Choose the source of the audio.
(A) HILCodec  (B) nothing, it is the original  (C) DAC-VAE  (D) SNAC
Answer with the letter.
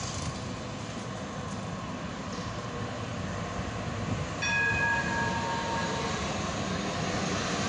B